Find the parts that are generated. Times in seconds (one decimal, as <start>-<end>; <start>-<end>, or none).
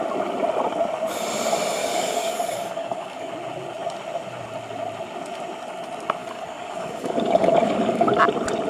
1.8-3.3; 6.2-8.2